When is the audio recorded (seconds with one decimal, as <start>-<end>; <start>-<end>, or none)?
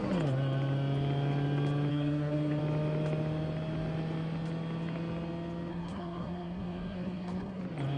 0.0-1.9; 2.6-5.7; 7.6-8.0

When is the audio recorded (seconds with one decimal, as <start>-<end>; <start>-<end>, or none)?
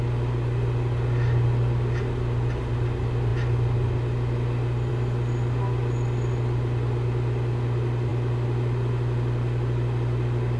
0.0-10.6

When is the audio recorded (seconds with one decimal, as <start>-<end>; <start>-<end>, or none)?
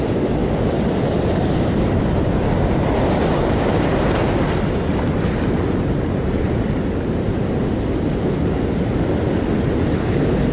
0.0-10.5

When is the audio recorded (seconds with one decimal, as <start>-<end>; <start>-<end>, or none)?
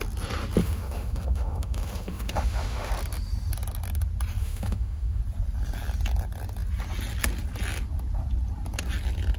0.0-0.6; 2.9-4.4; 5.2-9.4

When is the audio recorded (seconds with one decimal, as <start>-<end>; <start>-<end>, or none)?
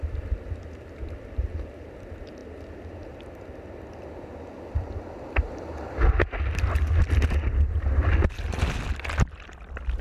0.0-10.0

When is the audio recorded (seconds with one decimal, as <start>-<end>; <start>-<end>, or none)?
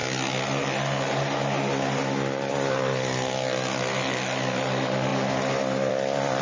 0.0-6.4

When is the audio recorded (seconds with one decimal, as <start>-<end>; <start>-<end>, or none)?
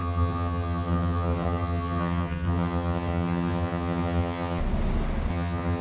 4.6-5.3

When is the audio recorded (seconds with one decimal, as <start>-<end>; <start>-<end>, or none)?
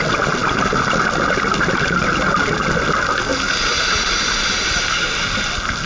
0.0-5.9